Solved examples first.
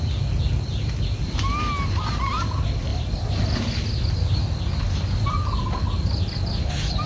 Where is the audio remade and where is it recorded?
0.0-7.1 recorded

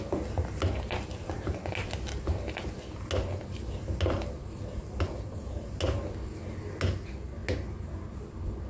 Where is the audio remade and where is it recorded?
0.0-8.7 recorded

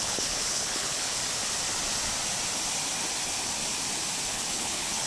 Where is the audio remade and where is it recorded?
0.0-1.2 remade; 1.2-4.3 recorded; 4.3-5.1 remade

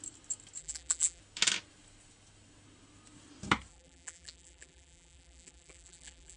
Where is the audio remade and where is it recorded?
0.0-0.6 recorded; 0.6-1.2 remade; 1.2-3.7 recorded; 3.7-6.4 remade

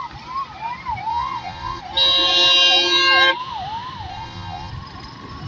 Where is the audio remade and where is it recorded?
0.0-1.1 recorded; 1.1-1.8 remade; 1.8-4.1 recorded; 4.1-4.7 remade; 4.7-5.5 recorded

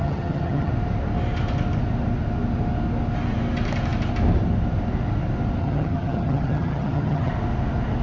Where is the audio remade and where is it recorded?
0.0-0.7 remade; 0.7-5.6 recorded; 5.6-7.3 remade; 7.3-8.0 recorded

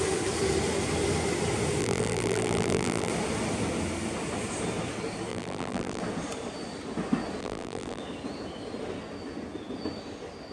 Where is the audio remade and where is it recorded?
0.0-1.8 recorded; 1.8-3.1 remade; 3.1-5.3 recorded; 5.3-6.0 remade; 6.0-7.4 recorded; 7.4-8.0 remade; 8.0-10.5 recorded